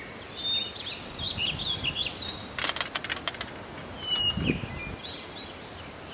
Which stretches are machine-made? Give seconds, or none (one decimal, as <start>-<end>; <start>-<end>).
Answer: none